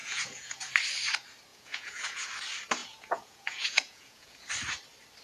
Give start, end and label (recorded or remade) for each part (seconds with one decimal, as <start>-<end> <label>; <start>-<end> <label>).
0.0-0.7 remade; 0.7-1.5 recorded; 1.5-2.3 remade; 2.3-2.8 recorded; 2.8-4.5 remade; 4.5-5.2 recorded